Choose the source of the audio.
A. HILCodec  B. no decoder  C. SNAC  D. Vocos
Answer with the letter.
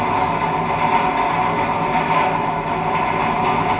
B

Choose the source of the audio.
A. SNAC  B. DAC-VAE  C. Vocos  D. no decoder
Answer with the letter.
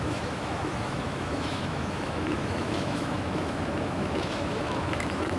B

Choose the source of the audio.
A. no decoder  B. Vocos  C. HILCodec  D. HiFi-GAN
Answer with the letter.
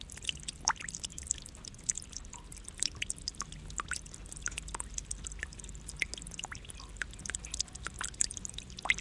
A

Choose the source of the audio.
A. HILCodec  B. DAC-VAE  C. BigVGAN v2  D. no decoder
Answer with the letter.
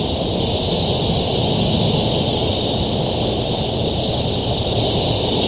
D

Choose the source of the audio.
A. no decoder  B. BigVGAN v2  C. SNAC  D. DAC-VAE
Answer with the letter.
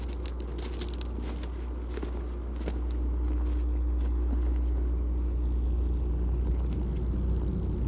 A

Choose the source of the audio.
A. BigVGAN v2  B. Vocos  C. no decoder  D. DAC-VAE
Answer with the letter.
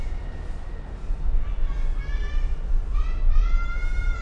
C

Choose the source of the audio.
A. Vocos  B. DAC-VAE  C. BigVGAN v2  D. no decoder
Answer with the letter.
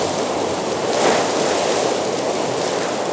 D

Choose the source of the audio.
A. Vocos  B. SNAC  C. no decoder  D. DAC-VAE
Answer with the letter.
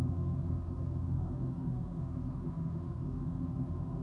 D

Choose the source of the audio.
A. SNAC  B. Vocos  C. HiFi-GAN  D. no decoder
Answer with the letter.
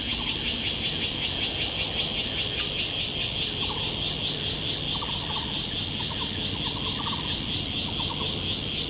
D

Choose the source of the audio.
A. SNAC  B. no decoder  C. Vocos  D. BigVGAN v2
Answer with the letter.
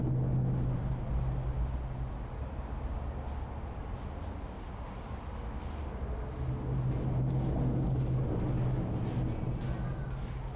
B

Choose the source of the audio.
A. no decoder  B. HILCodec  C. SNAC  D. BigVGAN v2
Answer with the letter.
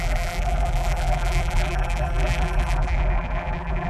D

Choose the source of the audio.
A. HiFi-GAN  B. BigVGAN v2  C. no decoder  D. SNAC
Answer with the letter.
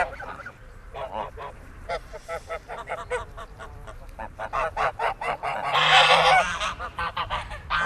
B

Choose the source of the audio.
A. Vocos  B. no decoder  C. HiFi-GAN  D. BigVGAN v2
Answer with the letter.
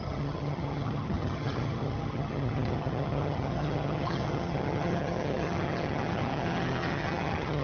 C